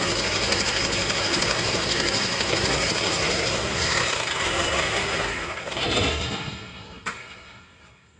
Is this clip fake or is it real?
fake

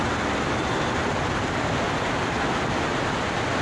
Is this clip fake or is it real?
fake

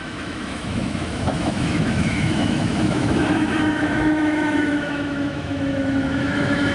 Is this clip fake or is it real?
fake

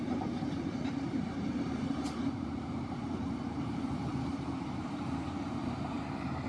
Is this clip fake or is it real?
fake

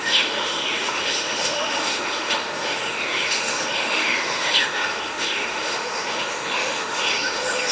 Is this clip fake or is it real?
fake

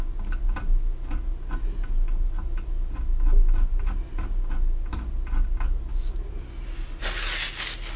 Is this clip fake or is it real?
real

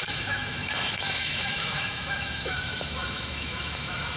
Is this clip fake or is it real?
fake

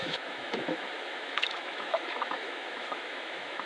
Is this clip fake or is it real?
fake